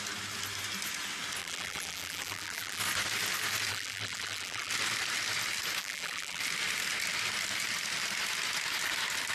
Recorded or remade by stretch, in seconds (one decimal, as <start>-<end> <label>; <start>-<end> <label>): 0.0-1.4 recorded; 1.4-2.8 remade; 2.8-3.7 recorded; 3.7-4.7 remade; 4.7-5.8 recorded; 5.8-6.4 remade; 6.4-9.3 recorded